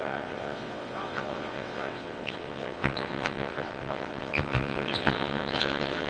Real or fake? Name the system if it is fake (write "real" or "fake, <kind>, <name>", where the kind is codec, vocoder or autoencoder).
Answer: fake, vocoder, WaveNeXt